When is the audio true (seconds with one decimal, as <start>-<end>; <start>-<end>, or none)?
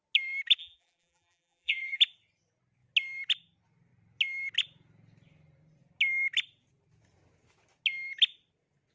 0.0-0.6; 2.0-8.9